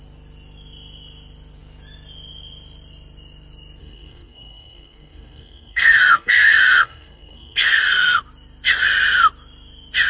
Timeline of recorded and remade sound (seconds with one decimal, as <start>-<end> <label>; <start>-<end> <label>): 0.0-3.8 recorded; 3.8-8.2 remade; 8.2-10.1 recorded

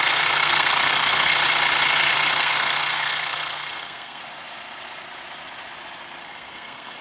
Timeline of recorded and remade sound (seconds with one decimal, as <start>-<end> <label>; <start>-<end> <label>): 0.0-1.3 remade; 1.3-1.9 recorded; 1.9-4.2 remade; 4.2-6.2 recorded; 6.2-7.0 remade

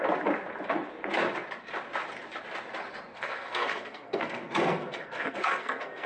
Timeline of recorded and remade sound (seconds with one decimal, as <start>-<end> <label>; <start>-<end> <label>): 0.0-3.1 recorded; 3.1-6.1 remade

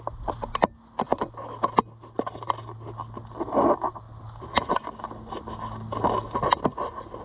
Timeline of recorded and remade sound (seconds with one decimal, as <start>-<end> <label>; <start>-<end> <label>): 0.0-7.2 recorded